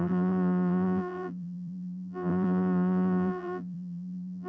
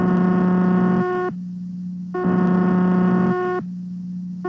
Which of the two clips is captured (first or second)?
second